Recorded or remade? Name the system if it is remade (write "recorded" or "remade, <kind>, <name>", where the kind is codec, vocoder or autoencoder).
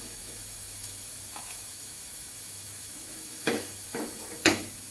remade, autoencoder, DAC-VAE